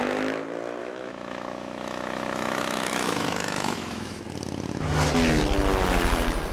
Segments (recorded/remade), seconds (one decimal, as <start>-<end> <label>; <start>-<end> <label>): 0.0-0.8 recorded; 0.8-4.2 remade; 4.2-6.5 recorded